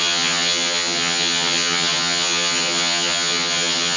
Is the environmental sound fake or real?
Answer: fake